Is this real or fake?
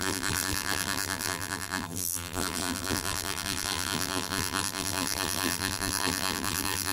fake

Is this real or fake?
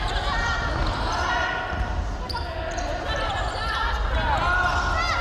real